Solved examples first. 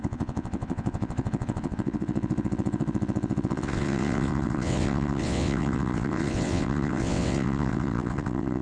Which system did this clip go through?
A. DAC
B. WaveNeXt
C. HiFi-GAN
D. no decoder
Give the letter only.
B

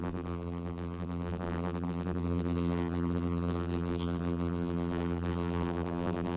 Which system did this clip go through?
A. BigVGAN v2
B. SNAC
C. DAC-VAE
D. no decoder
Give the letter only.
A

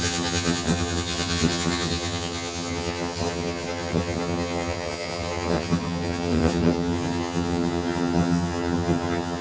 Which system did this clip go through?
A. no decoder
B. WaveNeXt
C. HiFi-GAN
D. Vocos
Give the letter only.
C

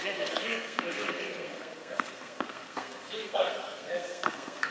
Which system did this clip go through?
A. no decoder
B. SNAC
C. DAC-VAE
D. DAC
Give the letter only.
B